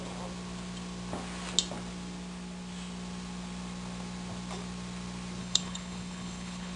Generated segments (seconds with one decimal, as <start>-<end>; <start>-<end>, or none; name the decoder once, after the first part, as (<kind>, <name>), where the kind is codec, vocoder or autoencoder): 5.4-6.8 (codec, HILCodec)